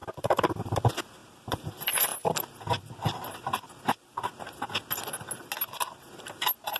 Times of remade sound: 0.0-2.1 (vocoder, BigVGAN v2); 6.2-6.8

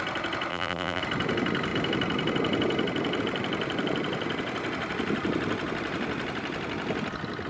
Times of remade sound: 0.5-1.0 (vocoder, BigVGAN v2)